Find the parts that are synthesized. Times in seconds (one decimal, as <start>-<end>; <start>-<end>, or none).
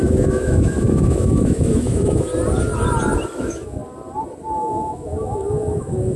0.0-2.3; 3.4-3.8; 4.6-6.2